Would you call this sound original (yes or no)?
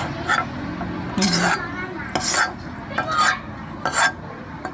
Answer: yes